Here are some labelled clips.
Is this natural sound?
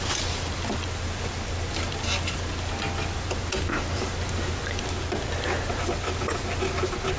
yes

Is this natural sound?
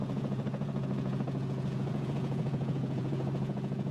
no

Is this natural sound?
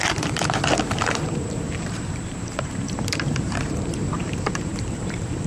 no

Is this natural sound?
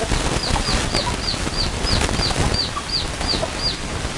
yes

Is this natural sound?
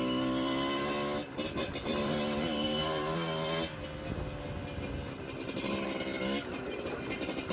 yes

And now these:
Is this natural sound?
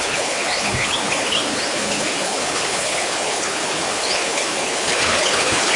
no